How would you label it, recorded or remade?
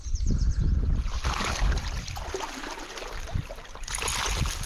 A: recorded